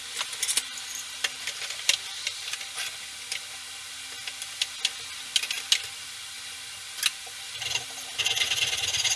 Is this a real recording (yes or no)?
yes